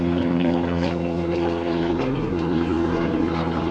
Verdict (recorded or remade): remade